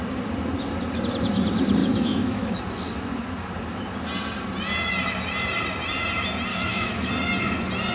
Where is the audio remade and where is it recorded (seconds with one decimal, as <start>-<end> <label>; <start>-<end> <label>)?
0.0-1.8 recorded; 1.8-2.6 remade; 2.6-6.5 recorded; 6.5-7.1 remade; 7.1-7.9 recorded